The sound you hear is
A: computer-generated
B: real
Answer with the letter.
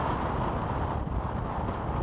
B